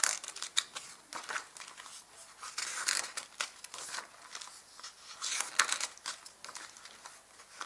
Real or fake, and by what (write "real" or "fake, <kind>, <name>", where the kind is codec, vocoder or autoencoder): real